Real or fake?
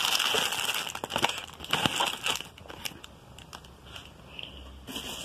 real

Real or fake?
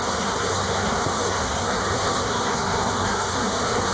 fake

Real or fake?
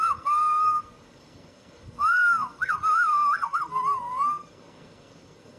fake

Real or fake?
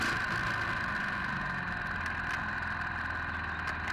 real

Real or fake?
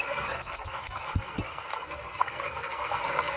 fake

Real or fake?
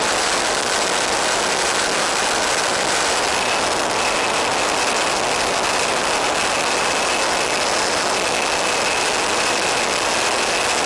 real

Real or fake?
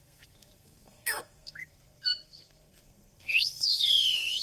fake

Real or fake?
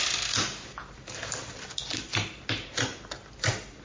real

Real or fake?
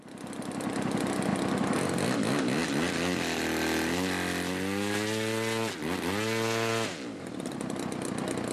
real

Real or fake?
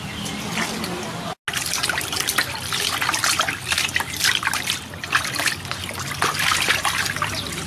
real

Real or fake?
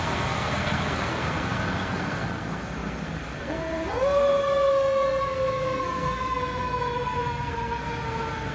fake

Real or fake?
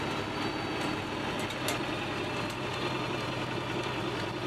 real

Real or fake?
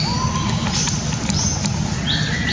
real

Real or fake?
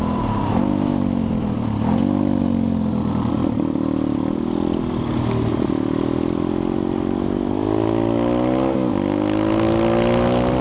real